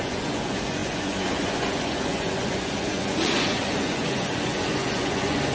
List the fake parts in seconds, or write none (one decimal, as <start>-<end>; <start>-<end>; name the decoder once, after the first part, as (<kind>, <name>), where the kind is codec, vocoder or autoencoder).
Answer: 0.0-5.5 (vocoder, Vocos)